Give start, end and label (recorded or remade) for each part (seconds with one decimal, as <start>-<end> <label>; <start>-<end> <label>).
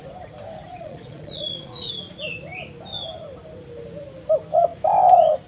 0.0-0.7 recorded; 0.7-1.9 remade; 1.9-5.5 recorded